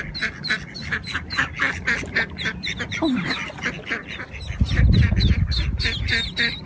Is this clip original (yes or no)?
yes